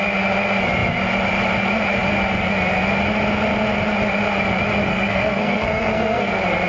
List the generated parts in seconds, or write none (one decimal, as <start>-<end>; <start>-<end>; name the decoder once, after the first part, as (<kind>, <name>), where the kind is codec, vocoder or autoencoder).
4.9-6.3 (codec, SNAC)